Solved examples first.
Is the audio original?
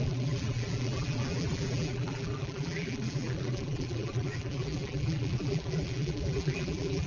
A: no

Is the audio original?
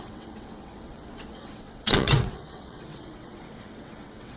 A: no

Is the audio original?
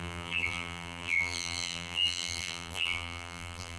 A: no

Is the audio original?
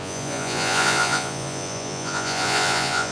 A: no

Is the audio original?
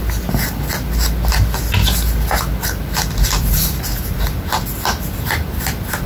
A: yes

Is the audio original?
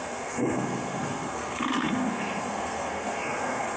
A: no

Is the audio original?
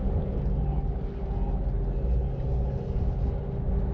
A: yes